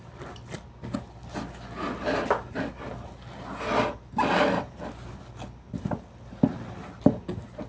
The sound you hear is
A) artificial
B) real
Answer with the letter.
B